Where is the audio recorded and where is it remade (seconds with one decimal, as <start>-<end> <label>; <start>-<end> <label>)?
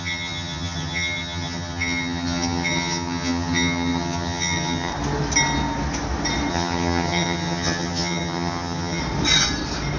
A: 0.0-4.9 remade; 4.9-6.5 recorded; 6.5-9.0 remade; 9.0-10.0 recorded